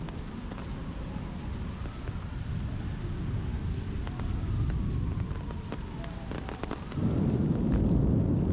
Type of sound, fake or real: real